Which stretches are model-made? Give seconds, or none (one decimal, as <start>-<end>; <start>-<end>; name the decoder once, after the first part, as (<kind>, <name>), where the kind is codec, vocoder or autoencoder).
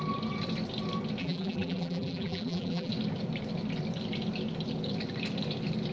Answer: 1.2-2.9 (vocoder, BigVGAN v2)